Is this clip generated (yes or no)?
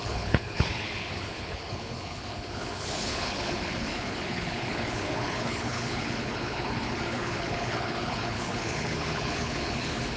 yes